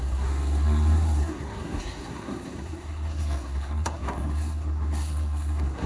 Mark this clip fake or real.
fake